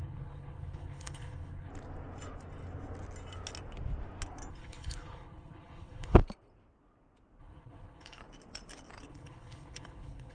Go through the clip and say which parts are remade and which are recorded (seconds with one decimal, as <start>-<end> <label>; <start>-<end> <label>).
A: 0.0-1.7 remade; 1.7-4.5 recorded; 4.5-6.2 remade; 6.2-7.4 recorded; 7.4-8.2 remade; 8.2-9.1 recorded; 9.1-10.3 remade